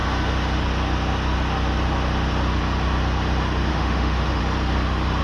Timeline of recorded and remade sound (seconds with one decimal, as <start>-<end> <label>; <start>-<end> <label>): 0.0-3.7 recorded; 3.7-4.4 remade; 4.4-5.2 recorded